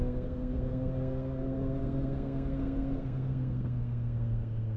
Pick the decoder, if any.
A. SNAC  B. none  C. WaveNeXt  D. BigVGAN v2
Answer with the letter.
A